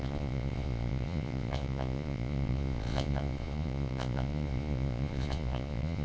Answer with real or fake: fake